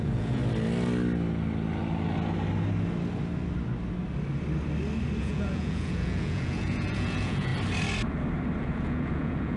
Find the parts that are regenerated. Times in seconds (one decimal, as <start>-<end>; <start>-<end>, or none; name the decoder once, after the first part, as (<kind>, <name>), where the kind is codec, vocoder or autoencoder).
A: 0.0-0.4 (vocoder, Vocos); 5.2-7.5; 8.6-9.6